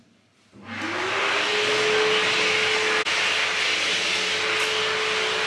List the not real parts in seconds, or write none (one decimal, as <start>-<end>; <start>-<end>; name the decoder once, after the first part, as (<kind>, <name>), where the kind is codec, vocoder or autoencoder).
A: none